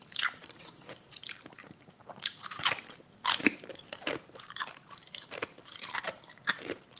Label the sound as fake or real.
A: fake